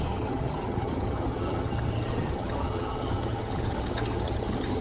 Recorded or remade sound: remade